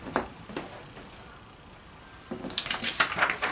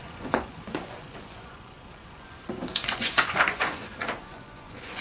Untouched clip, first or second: first